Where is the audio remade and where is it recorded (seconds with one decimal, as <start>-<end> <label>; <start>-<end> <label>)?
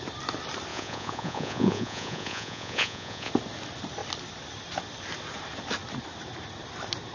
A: 0.0-0.7 recorded; 0.7-3.3 remade; 3.3-7.1 recorded